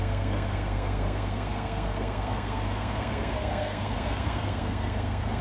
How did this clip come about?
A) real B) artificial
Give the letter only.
B